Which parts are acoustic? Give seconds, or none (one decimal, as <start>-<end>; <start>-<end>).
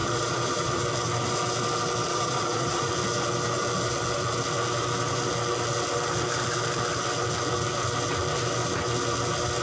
0.8-2.1; 2.9-9.6